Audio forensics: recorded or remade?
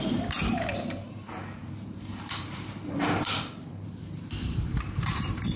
remade